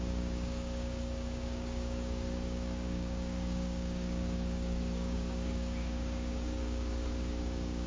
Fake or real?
fake